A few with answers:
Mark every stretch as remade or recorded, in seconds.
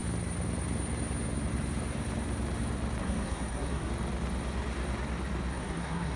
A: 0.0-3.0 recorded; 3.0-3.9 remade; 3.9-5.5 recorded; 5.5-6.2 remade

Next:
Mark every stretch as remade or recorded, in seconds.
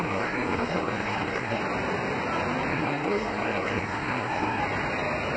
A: 0.0-1.6 remade; 1.6-2.7 recorded; 2.7-4.6 remade; 4.6-5.4 recorded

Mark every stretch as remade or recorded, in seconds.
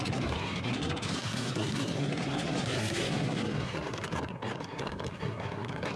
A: 0.0-6.0 remade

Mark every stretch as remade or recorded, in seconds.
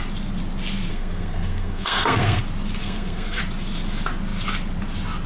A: 0.0-0.9 recorded; 0.9-2.4 remade; 2.4-2.8 recorded; 2.8-3.4 remade; 3.4-5.3 recorded